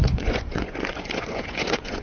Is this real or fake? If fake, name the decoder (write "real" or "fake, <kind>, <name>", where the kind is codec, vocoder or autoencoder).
fake, vocoder, Vocos